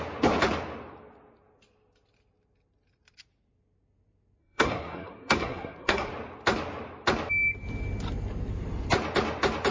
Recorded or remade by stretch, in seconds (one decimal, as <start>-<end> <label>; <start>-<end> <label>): 0.0-4.4 recorded; 4.4-6.1 remade; 6.1-9.7 recorded